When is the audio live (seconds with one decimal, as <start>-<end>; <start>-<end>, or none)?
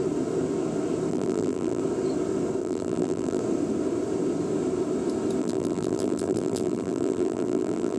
0.0-1.1; 1.8-2.6; 3.4-5.4